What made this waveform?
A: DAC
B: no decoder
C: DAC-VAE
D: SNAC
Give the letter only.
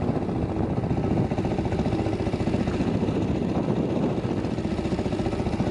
B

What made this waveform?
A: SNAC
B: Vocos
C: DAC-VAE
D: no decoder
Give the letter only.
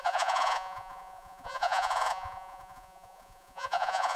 B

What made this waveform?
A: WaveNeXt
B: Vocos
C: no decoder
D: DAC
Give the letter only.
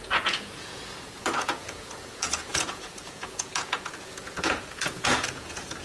B